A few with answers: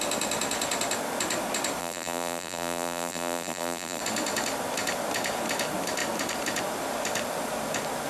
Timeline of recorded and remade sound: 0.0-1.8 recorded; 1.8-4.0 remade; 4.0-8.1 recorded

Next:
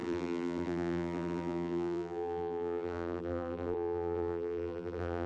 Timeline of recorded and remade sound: 0.0-5.3 remade

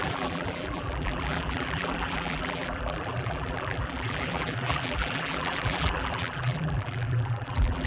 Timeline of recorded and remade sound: 0.0-7.9 remade

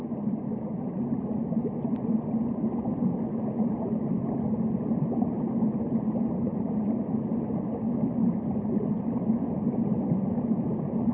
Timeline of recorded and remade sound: 0.0-6.5 recorded; 6.5-7.0 remade; 7.0-11.1 recorded

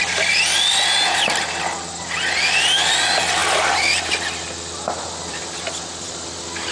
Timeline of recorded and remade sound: 0.0-3.4 recorded; 3.4-4.1 remade; 4.1-5.3 recorded; 5.3-6.7 remade

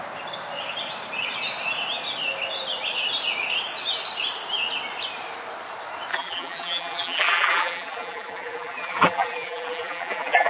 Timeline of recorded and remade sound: 0.0-6.1 recorded; 6.1-10.5 remade

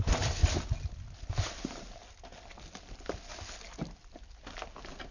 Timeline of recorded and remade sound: 0.0-0.4 remade; 0.4-1.3 recorded; 1.3-2.0 remade; 2.0-5.1 recorded